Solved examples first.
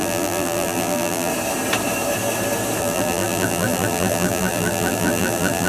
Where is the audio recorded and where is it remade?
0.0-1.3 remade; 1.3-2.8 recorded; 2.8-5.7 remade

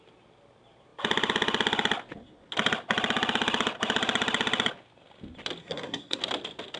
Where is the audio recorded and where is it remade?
0.0-5.6 recorded; 5.6-6.2 remade; 6.2-6.8 recorded

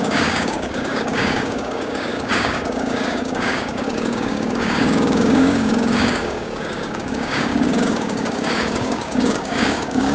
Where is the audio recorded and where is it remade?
0.0-10.1 remade

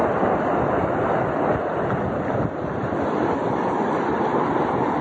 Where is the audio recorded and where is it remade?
0.0-5.0 recorded